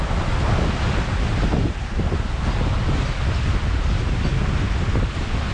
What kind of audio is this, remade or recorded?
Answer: recorded